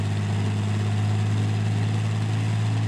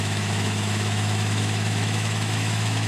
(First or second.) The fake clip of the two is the second